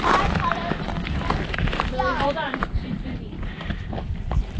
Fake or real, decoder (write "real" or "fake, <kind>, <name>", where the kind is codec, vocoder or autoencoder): fake, vocoder, BigVGAN v2